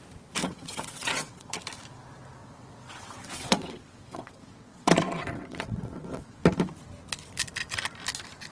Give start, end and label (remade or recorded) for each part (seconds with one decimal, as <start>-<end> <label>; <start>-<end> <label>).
0.0-0.4 recorded; 0.4-1.5 remade; 1.5-2.4 recorded; 2.4-6.4 remade; 6.4-8.5 recorded